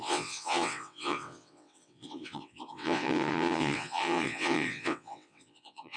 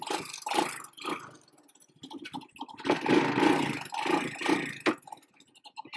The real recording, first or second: second